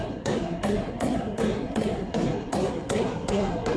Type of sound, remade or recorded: remade